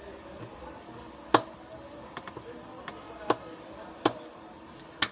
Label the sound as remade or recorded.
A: recorded